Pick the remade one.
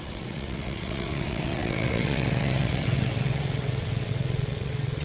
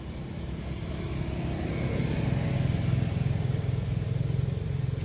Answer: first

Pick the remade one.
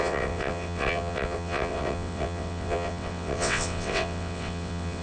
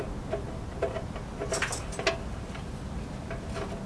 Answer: first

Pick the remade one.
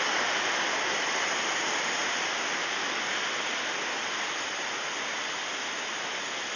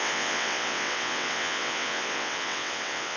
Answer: second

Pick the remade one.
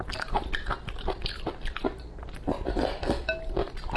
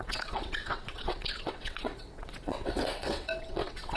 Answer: second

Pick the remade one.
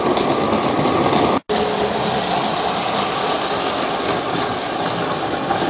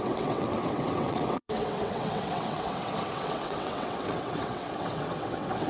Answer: second